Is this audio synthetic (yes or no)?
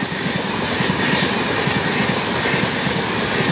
no